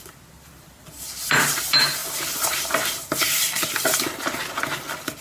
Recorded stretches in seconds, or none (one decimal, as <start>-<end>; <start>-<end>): 0.0-5.2